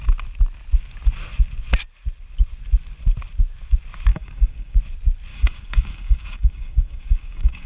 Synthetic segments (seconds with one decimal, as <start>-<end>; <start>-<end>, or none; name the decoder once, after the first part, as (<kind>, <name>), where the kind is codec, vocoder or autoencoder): 4.1-4.8 (codec, DAC); 5.3-7.7